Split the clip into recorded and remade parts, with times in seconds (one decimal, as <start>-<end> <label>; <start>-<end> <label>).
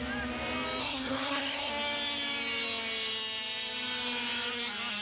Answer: 0.0-0.8 recorded; 0.8-1.7 remade; 1.7-5.0 recorded